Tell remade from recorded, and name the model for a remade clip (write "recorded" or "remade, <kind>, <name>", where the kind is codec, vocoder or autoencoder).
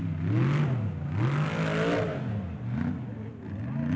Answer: recorded